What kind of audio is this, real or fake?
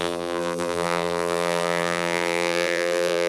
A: fake